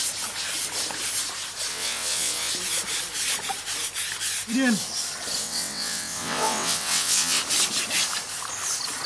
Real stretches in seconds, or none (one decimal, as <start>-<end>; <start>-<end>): 0.0-1.7; 2.5-5.4; 7.4-9.1